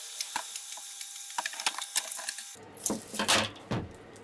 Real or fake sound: real